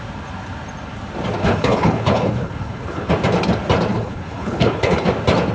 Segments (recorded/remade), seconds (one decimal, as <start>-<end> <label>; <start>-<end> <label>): 0.0-1.4 recorded; 1.4-3.1 remade; 3.1-3.9 recorded; 3.9-5.1 remade; 5.1-5.5 recorded